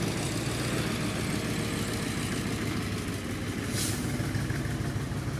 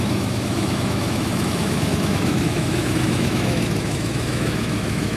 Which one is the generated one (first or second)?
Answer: second